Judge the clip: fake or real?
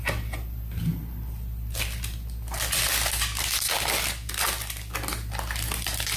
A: real